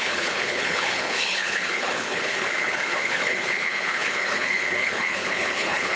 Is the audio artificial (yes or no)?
yes